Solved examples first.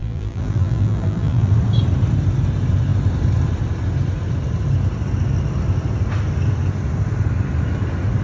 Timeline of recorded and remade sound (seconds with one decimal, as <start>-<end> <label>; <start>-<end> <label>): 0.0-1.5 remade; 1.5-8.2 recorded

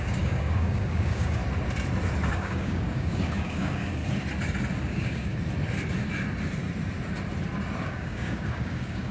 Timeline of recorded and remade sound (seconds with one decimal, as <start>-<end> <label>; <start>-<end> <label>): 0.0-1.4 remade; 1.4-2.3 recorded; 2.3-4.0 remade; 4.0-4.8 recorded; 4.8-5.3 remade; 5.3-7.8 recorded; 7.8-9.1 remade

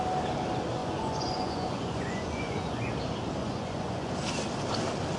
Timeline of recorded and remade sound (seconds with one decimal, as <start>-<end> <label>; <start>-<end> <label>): 0.0-0.8 recorded; 0.8-2.9 remade; 2.9-3.4 recorded; 3.4-4.1 remade; 4.1-5.2 recorded

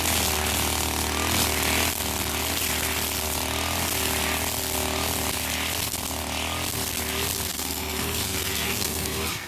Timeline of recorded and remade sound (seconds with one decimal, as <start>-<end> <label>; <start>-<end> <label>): 0.0-7.5 recorded; 7.5-9.5 remade

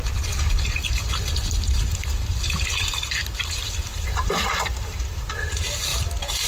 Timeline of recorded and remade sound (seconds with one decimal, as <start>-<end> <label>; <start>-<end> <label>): 0.0-1.9 recorded; 1.9-4.2 remade; 4.2-6.5 recorded

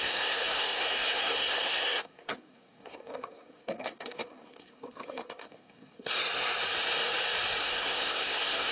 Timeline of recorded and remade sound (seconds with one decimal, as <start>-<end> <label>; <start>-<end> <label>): 0.0-6.2 remade; 6.2-7.6 recorded; 7.6-8.7 remade

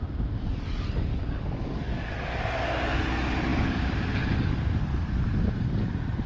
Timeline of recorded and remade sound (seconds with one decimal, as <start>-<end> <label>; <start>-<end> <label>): 0.0-1.1 recorded; 1.1-2.1 remade; 2.1-6.3 recorded

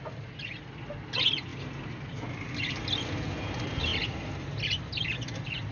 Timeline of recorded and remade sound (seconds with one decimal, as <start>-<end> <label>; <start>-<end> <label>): 0.0-5.7 recorded